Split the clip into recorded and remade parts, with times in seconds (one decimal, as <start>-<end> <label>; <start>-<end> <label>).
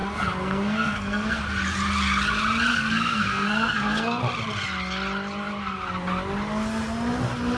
0.0-1.4 remade; 1.4-2.7 recorded; 2.7-4.2 remade; 4.2-7.6 recorded